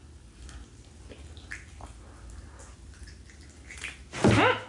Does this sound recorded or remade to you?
recorded